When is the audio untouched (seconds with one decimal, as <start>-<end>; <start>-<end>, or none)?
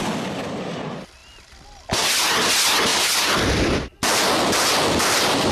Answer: 0.0-1.2; 2.5-2.9; 4.0-5.5